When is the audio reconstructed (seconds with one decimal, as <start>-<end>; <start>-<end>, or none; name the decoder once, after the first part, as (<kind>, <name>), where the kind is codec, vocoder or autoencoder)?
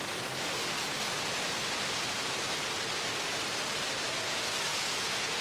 4.7-5.4 (vocoder, Vocos)